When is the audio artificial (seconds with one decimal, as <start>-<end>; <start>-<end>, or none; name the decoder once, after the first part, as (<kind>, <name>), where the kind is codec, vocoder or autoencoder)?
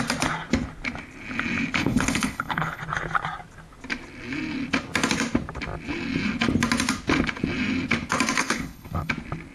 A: 1.8-2.8 (codec, HILCodec); 8.4-9.1